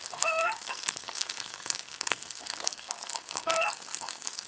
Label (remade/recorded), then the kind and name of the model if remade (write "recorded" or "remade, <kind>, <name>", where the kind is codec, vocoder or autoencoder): remade, codec, SNAC